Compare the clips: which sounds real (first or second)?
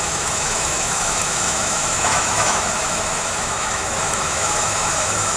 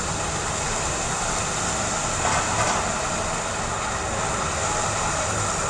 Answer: second